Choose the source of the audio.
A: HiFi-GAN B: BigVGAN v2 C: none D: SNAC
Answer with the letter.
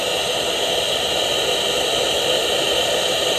C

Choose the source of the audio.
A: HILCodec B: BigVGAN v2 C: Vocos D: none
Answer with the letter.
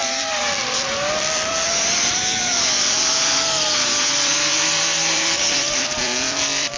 B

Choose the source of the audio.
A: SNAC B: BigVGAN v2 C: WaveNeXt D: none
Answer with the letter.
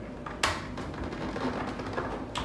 D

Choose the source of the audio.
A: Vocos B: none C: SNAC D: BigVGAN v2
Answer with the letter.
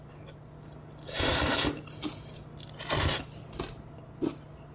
B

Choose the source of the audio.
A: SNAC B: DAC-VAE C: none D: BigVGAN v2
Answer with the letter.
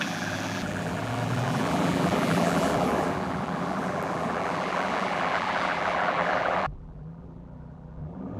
D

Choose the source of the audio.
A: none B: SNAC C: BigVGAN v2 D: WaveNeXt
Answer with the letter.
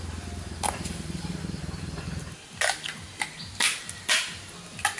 A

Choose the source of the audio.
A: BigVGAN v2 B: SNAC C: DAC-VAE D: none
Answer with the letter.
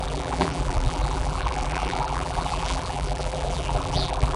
A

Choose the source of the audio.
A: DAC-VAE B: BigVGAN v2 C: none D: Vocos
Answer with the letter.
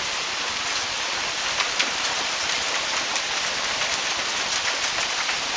C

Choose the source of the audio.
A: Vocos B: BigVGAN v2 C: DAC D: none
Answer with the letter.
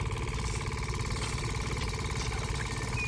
D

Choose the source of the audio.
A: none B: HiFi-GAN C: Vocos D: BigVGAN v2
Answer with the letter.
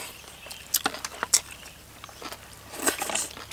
A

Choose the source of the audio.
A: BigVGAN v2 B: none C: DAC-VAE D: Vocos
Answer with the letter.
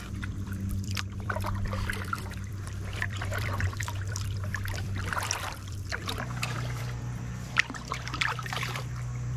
A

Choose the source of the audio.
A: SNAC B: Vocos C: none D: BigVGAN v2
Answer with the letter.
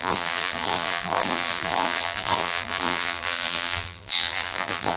D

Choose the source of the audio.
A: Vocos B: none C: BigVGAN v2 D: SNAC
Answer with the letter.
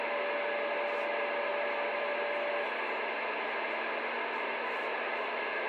B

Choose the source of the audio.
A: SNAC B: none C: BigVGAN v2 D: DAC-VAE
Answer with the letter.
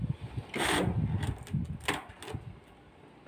B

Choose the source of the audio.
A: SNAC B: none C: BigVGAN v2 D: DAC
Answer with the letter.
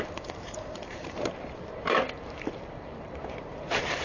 C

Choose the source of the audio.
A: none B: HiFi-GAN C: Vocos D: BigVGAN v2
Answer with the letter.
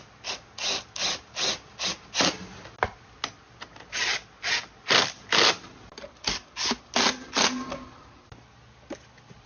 A